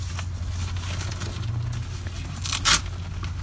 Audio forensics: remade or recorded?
recorded